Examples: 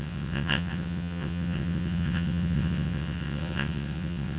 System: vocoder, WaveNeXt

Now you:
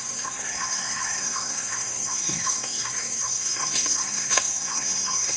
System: codec, SNAC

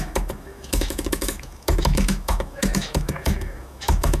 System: autoencoder, DAC-VAE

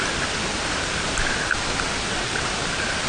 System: none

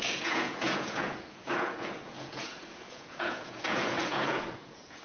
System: vocoder, Vocos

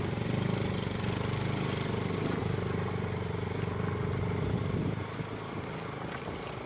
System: none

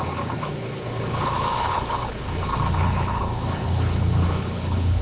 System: codec, HILCodec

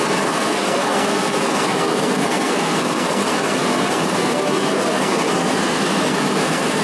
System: codec, SNAC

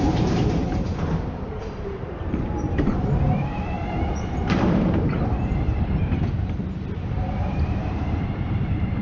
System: vocoder, BigVGAN v2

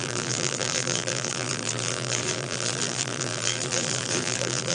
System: vocoder, BigVGAN v2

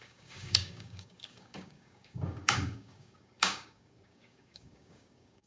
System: codec, DAC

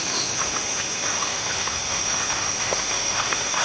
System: autoencoder, DAC-VAE